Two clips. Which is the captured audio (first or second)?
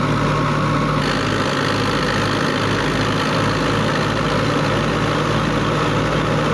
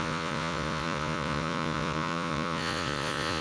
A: first